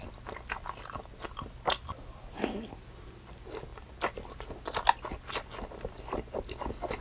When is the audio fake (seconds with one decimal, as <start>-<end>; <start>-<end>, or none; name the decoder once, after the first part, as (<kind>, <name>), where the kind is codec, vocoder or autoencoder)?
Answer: none